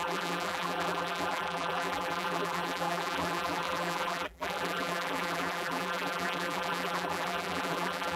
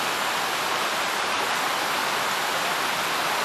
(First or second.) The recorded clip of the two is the second